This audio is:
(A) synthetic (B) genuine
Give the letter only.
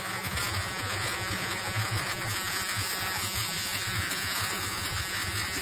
A